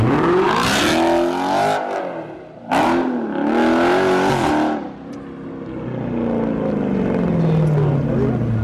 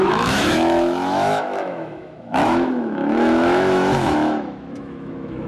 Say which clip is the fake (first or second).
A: second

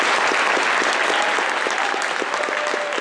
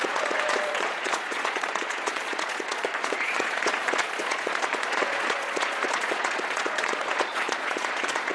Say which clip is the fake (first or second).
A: second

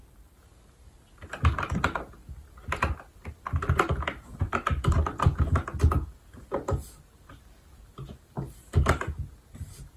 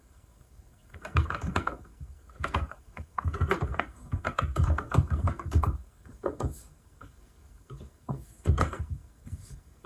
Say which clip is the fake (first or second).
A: second